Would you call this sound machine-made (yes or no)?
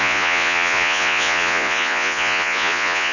yes